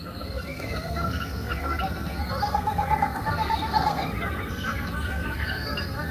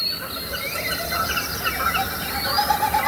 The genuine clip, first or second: second